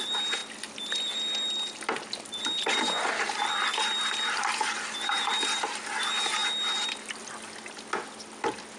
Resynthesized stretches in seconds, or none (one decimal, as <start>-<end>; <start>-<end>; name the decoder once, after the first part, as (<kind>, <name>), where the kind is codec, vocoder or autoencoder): none